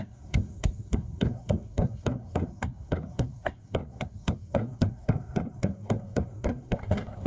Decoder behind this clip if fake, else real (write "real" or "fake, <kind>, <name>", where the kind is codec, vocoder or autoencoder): fake, codec, SNAC